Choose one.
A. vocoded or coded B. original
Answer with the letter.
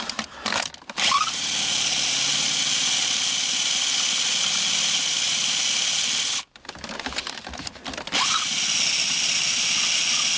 B